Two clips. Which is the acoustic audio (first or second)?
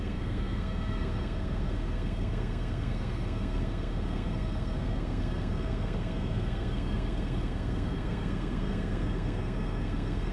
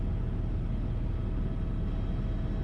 second